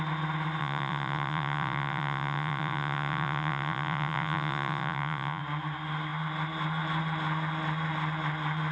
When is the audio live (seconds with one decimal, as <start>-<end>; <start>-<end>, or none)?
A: 0.0-0.6; 5.4-8.7